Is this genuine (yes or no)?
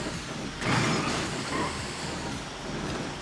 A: yes